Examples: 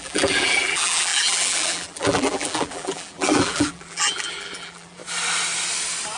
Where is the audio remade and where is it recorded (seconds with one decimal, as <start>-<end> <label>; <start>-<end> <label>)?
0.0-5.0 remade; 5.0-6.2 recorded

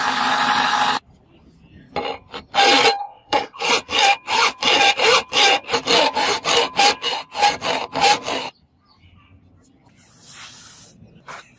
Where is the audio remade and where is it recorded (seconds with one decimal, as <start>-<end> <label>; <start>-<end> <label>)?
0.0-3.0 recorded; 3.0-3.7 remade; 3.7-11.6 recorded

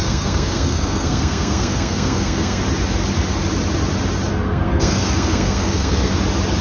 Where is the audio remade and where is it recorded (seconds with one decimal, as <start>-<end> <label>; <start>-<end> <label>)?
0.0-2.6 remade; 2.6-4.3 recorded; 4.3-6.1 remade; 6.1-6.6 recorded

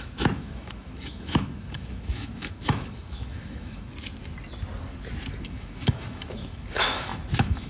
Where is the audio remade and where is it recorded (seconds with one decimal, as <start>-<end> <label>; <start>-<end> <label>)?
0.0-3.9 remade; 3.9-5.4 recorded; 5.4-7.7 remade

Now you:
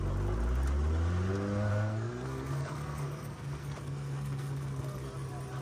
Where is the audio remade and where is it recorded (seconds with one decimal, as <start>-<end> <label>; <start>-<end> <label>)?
0.0-1.7 recorded; 1.7-5.1 remade; 5.1-5.6 recorded

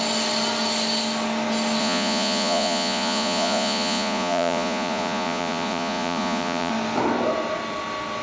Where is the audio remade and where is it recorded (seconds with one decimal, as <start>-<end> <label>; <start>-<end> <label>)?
0.0-1.8 recorded; 1.8-6.7 remade; 6.7-8.2 recorded

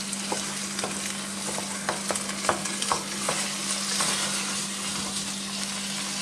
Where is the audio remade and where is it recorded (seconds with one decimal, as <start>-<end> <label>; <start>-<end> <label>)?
0.0-2.6 recorded; 2.6-3.2 remade; 3.2-6.2 recorded

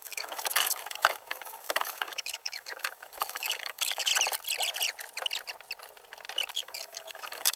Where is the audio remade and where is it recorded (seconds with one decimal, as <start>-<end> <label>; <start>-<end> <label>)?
0.0-4.1 remade; 4.1-6.5 recorded; 6.5-7.6 remade